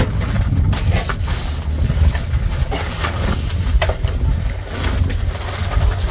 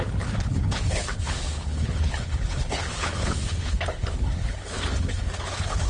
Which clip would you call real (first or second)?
first